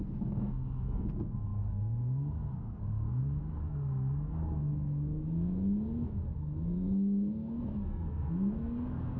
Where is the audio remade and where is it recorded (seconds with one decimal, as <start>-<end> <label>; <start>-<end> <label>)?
0.0-9.2 remade